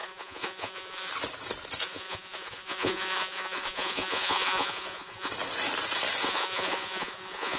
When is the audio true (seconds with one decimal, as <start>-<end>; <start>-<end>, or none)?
1.1-1.8; 5.3-6.2